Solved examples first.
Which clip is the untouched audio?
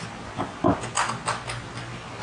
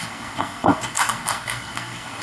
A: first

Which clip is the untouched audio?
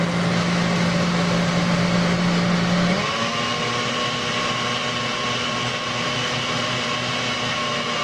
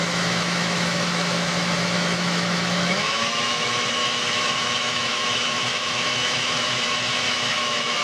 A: first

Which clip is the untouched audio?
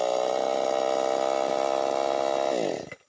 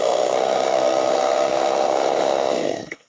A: first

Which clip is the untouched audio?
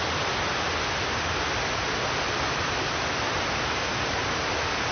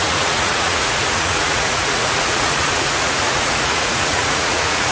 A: first